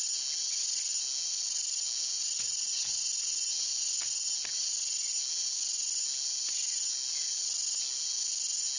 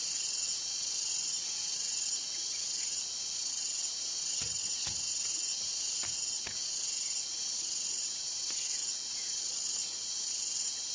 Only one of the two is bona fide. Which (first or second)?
first